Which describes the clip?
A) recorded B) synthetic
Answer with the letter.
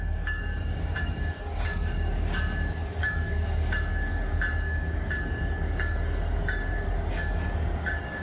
B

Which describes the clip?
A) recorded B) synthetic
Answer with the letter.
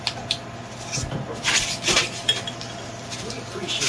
A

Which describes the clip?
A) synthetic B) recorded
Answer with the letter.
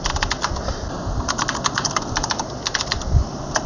B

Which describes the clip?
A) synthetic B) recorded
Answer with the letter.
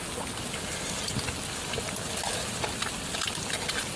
B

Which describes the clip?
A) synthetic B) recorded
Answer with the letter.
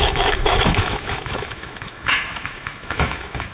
A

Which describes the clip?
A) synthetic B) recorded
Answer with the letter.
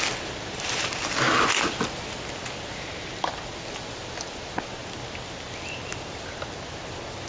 B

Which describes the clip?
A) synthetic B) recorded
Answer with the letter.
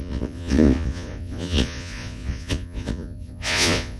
A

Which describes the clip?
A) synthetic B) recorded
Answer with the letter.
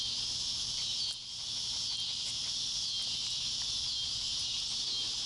B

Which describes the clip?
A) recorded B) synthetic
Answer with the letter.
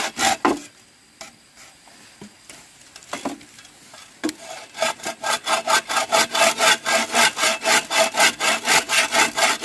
A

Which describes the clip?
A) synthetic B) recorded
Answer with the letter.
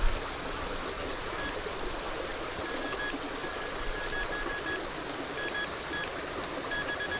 B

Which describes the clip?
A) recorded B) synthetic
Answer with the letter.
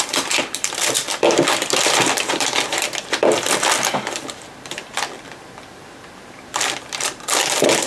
B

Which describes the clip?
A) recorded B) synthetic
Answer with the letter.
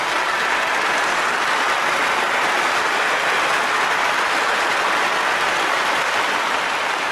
A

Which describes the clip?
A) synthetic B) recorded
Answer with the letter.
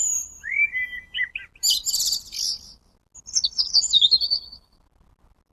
B